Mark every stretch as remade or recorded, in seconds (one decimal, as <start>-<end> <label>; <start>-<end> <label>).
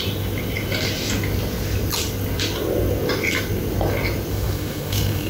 0.0-4.3 recorded; 4.3-5.3 remade